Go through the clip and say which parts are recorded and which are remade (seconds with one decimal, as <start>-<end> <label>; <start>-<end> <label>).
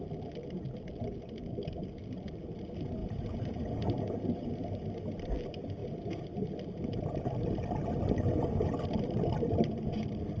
0.0-3.0 recorded; 3.0-4.2 remade; 4.2-10.4 recorded